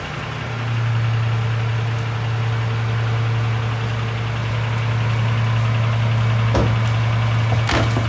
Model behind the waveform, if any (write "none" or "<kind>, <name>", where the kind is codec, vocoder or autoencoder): none